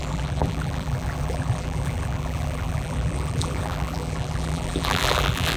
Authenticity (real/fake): fake